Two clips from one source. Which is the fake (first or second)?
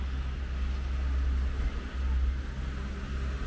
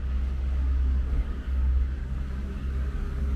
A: second